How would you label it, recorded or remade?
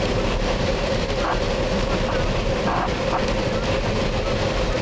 recorded